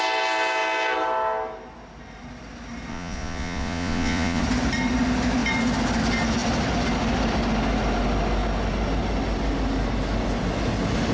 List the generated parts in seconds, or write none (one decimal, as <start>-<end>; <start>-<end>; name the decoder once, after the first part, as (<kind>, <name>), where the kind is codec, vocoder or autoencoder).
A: 2.9-4.4 (vocoder, Vocos)